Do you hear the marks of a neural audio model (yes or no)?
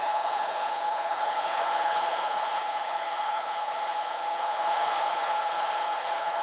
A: yes